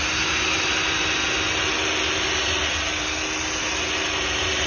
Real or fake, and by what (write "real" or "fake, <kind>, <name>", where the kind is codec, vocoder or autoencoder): real